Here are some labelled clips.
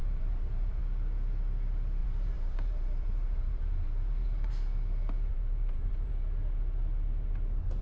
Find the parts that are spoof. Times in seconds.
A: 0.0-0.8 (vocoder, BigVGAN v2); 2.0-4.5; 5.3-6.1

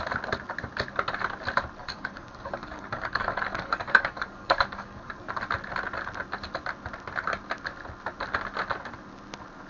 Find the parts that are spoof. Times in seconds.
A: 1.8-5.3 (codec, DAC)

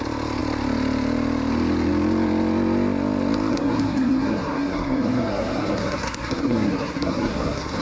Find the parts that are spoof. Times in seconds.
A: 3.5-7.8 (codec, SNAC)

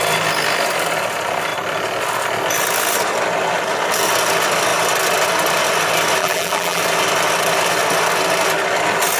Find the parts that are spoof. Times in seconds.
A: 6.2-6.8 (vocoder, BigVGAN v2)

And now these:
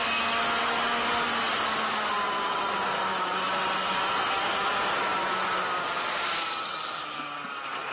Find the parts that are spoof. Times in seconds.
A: none

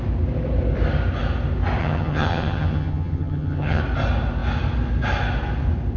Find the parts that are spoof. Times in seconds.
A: 1.8-3.8 (vocoder, HiFi-GAN)